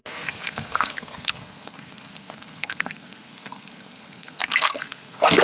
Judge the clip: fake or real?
fake